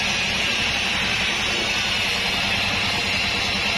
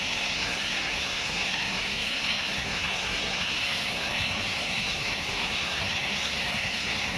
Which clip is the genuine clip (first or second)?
first